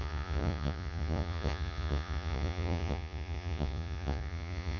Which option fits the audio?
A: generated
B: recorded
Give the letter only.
A